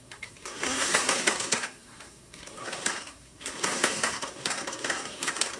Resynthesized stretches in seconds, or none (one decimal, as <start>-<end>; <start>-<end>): 0.0-5.6